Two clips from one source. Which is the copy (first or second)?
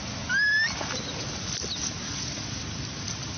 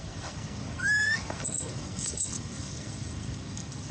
second